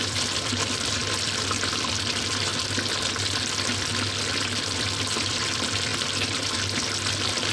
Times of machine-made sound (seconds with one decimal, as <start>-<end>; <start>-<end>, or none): 0.0-2.5; 4.6-7.5

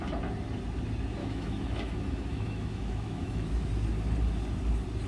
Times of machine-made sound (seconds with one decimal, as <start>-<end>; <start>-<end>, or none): 1.2-3.7